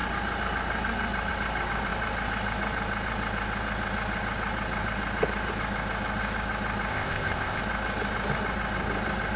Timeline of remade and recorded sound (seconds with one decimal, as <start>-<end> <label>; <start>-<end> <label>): 0.0-6.9 recorded; 6.9-7.6 remade; 7.6-9.4 recorded